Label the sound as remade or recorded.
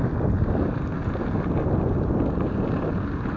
recorded